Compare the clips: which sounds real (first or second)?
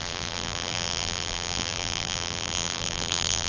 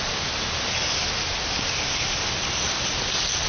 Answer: second